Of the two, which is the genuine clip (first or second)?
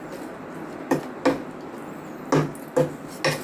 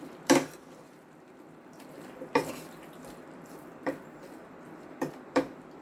first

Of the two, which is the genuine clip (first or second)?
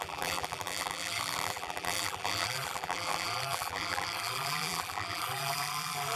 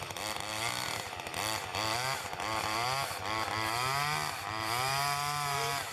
second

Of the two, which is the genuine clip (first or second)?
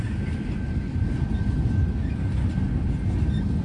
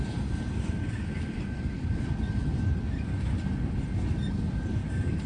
first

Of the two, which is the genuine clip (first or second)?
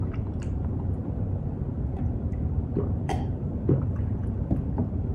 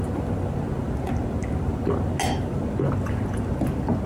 second